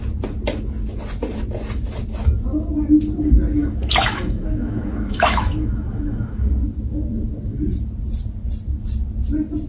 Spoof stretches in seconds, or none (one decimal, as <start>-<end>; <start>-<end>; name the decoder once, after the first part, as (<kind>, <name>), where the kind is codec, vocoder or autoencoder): 3.6-6.5 (autoencoder, DAC-VAE)